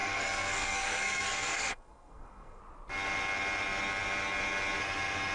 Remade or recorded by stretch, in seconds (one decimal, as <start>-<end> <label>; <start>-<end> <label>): 0.0-2.6 remade; 2.6-5.3 recorded